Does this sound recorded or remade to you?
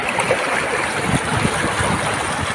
recorded